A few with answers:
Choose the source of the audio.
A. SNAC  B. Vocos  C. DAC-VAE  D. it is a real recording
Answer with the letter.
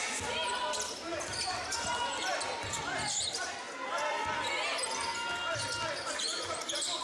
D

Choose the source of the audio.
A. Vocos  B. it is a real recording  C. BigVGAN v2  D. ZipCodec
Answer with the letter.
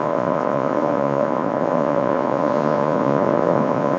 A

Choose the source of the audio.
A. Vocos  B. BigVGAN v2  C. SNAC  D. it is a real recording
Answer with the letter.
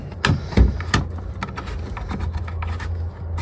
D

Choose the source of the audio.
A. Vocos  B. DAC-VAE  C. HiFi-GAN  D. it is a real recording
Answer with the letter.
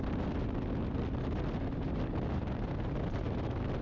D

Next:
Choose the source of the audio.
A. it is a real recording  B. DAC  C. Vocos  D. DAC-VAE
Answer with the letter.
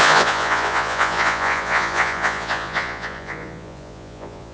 C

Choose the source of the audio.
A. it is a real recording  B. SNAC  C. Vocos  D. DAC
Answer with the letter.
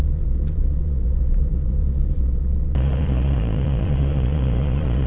C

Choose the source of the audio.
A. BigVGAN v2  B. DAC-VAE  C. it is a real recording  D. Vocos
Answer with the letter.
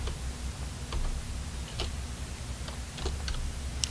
C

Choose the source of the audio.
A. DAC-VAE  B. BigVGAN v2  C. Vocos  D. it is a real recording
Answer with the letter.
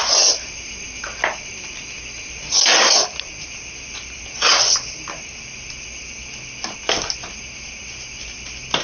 D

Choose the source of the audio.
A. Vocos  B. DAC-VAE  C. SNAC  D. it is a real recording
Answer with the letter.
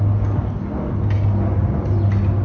D